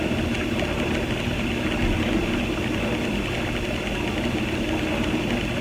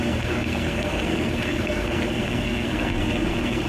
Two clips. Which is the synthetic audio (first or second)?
second